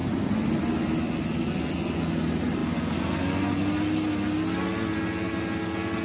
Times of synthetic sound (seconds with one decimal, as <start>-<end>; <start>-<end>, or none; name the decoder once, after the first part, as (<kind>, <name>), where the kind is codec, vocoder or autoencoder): none